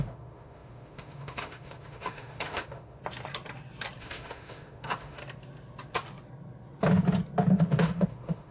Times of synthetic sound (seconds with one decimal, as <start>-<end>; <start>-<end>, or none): 0.0-3.0; 4.0-5.2; 7.5-8.5